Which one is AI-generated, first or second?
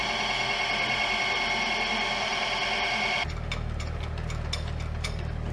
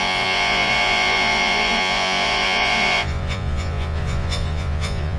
second